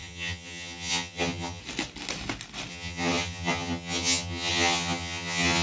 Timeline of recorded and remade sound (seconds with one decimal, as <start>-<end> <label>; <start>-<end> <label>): 0.0-1.6 remade; 1.6-2.7 recorded; 2.7-5.6 remade